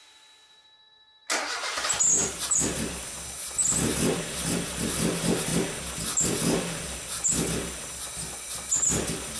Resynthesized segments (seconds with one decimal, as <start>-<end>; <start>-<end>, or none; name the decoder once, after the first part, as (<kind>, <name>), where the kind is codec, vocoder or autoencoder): none